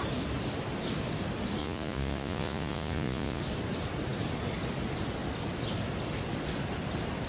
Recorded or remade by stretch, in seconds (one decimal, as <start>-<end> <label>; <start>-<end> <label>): 0.0-1.6 recorded; 1.6-3.4 remade; 3.4-7.3 recorded

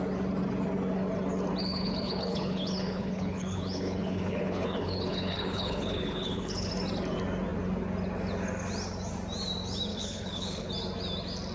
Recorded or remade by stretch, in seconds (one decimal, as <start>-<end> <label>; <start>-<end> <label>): 0.0-1.6 recorded; 1.6-6.7 remade; 6.7-9.9 recorded; 9.9-10.7 remade; 10.7-11.5 recorded

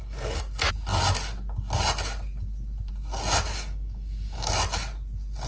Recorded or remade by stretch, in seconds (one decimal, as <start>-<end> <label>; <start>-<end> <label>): 0.0-3.5 recorded; 3.5-4.5 remade; 4.5-5.5 recorded